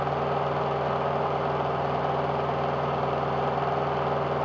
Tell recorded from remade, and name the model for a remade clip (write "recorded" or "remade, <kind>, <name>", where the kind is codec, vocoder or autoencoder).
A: recorded